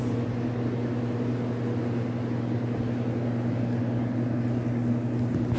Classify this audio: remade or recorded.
recorded